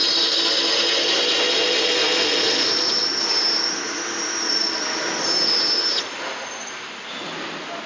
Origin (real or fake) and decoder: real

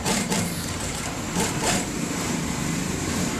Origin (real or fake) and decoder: fake, vocoder, BigVGAN v2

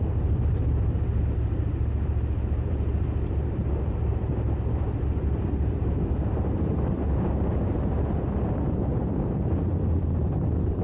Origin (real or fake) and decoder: fake, vocoder, BigVGAN v2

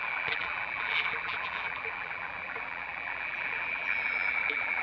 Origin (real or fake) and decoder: fake, vocoder, BigVGAN v2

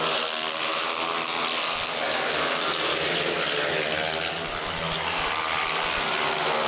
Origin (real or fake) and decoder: fake, vocoder, BigVGAN v2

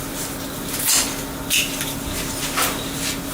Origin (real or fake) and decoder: real